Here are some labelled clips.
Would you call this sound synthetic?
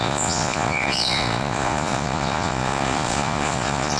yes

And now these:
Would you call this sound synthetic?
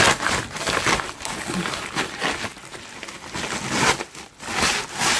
no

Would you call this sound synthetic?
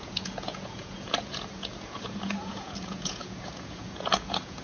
yes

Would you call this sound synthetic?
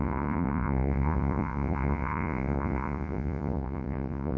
yes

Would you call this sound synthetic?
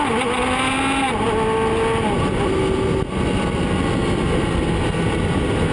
no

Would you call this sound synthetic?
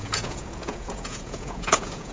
yes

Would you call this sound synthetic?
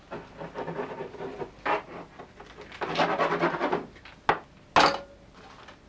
no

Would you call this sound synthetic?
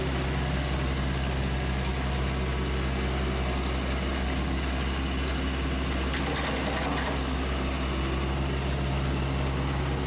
no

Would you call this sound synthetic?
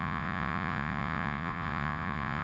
yes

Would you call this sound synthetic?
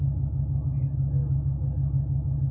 no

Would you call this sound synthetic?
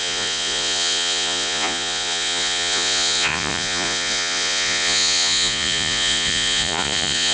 yes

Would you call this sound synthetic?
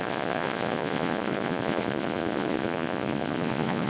yes